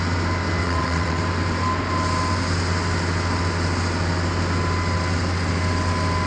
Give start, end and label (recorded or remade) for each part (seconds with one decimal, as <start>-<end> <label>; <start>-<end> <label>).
0.0-0.6 recorded; 0.6-1.2 remade; 1.2-6.3 recorded

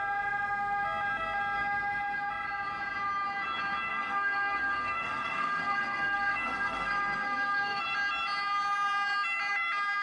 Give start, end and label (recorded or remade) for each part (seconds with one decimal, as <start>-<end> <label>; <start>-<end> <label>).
0.0-3.9 recorded; 3.9-7.8 remade; 7.8-10.0 recorded

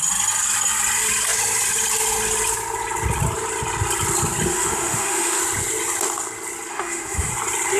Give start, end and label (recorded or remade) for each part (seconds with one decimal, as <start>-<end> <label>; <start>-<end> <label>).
0.0-4.5 recorded; 4.5-5.4 remade; 5.4-6.7 recorded; 6.7-7.3 remade; 7.3-7.8 recorded

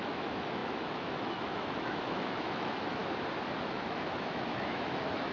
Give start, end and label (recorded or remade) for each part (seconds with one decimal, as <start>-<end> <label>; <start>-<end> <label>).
0.0-3.0 remade; 3.0-3.7 recorded; 3.7-5.3 remade

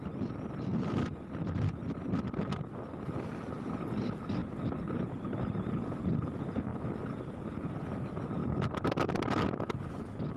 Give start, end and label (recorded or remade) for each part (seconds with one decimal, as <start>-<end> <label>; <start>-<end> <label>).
0.0-10.4 recorded

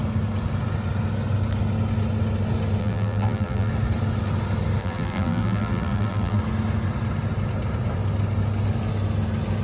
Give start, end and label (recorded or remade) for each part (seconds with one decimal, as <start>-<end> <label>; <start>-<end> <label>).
0.0-2.8 recorded; 2.8-3.7 remade; 3.7-4.8 recorded; 4.8-6.4 remade; 6.4-9.6 recorded

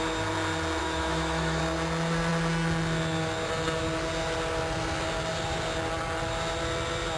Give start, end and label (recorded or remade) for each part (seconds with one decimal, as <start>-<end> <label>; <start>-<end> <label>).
0.0-0.8 recorded; 0.8-1.6 remade; 1.6-7.2 recorded